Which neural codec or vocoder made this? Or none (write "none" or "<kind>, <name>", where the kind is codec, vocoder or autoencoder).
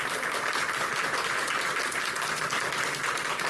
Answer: none